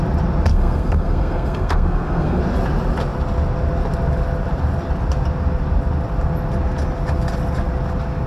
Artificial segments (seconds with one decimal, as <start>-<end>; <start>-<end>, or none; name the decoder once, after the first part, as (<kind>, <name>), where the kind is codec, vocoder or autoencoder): 0.5-2.4 (codec, SNAC)